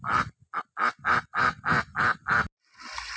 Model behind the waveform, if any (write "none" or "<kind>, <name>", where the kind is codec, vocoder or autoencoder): none